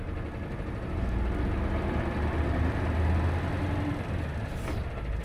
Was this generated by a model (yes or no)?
no